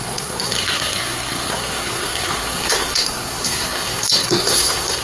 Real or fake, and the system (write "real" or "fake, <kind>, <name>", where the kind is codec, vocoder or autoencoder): fake, codec, SNAC